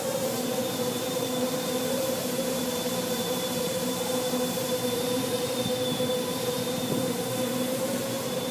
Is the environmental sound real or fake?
fake